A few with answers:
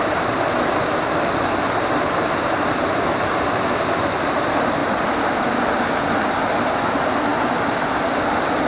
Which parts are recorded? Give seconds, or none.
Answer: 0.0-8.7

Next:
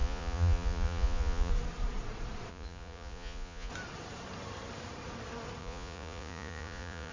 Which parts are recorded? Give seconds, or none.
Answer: 1.5-2.5; 3.7-5.6

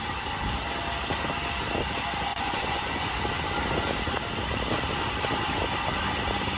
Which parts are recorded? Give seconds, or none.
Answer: 0.0-2.3; 3.2-6.6

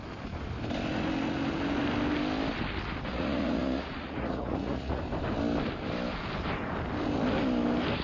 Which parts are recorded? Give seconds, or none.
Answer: 0.0-3.1; 5.0-8.0

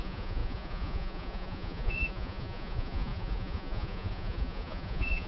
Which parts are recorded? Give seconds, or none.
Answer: none